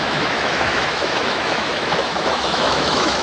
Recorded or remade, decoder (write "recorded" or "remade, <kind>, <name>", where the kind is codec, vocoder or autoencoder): remade, autoencoder, DAC-VAE